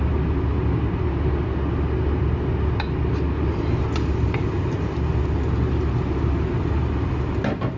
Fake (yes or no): no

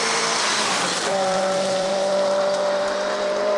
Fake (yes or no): yes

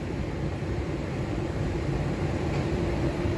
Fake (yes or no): yes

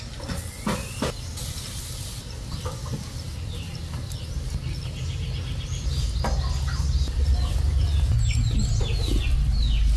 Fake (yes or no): no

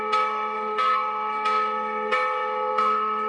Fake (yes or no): yes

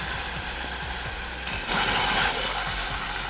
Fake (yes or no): no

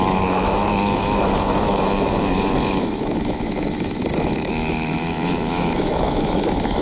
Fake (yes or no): yes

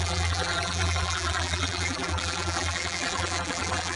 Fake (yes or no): yes